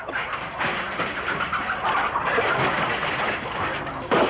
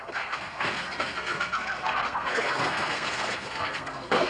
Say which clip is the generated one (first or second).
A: second